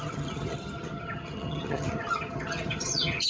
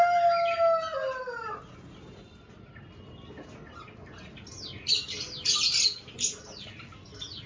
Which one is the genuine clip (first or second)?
second